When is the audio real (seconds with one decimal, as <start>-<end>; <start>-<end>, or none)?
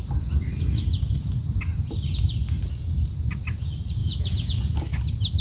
0.0-4.0; 4.7-5.4